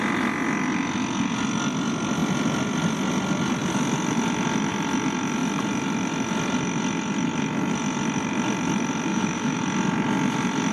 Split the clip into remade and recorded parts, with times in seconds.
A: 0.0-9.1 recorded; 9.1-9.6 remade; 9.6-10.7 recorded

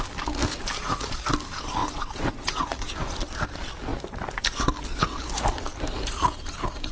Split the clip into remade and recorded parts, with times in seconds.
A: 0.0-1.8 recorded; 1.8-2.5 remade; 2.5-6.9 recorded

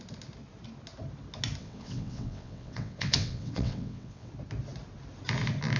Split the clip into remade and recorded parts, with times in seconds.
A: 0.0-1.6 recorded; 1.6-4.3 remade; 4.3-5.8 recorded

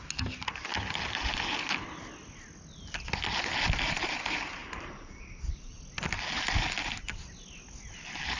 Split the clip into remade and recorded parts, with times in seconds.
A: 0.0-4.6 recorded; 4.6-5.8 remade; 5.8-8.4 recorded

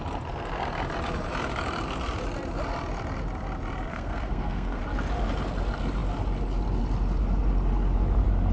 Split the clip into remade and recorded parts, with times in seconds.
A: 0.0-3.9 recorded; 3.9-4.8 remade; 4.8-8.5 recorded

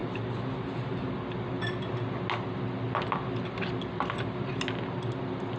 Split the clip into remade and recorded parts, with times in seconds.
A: 0.0-1.1 remade; 1.1-5.6 recorded

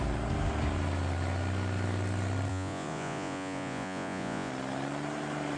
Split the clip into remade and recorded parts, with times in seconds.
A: 0.0-2.5 recorded; 2.5-4.5 remade; 4.5-5.6 recorded